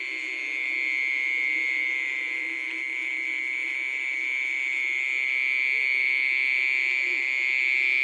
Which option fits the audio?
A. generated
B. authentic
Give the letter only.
B